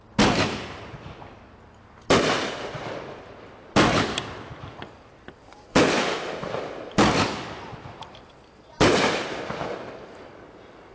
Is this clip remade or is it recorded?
recorded